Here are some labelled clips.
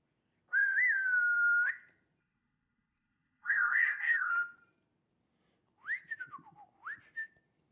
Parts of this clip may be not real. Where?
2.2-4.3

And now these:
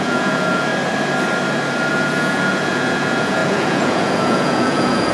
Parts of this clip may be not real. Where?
0.0-0.7; 1.9-5.1

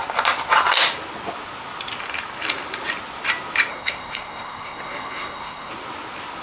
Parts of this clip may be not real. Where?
3.7-5.7

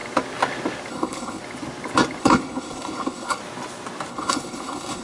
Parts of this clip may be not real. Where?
0.9-1.4; 2.2-3.4; 4.1-5.0

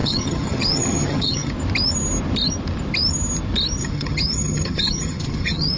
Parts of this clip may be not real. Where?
0.0-1.5; 3.8-5.8

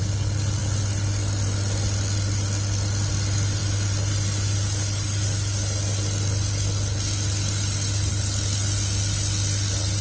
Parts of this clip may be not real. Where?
none

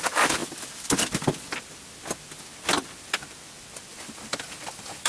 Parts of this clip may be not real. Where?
3.9-5.1

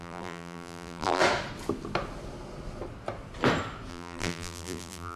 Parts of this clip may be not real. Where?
0.0-1.2; 3.9-5.2